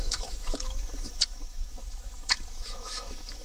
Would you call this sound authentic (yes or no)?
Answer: no